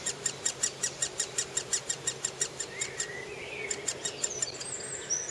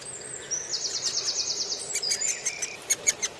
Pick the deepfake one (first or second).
first